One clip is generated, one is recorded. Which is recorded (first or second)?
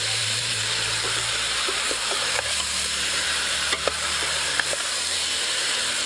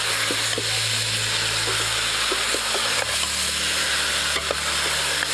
second